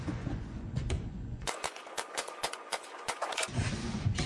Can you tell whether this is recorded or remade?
remade